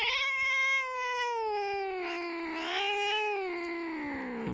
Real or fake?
real